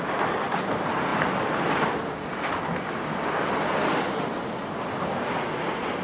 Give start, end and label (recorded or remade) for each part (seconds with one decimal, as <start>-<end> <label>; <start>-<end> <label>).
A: 0.0-6.0 recorded